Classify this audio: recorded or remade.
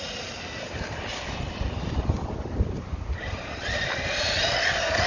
recorded